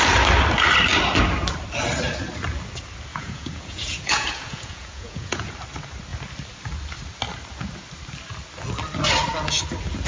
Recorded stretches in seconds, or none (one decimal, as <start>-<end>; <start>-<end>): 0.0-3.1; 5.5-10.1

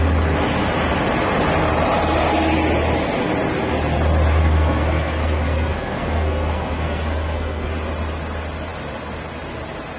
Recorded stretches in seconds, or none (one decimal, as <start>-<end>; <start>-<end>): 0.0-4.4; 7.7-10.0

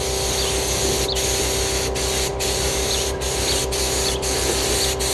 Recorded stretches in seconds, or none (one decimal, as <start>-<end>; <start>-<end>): 0.0-2.3; 3.6-5.1

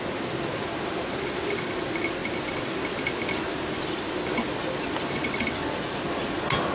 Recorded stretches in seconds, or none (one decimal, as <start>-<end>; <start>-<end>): 0.0-6.7